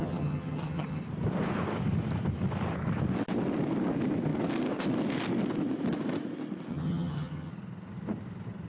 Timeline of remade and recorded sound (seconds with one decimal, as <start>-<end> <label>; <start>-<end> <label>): 0.0-1.0 remade; 1.0-6.7 recorded; 6.7-7.5 remade; 7.5-8.7 recorded